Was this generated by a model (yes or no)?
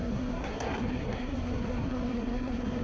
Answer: yes